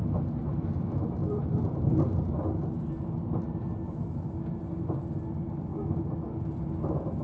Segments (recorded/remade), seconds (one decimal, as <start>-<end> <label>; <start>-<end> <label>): 0.0-7.2 recorded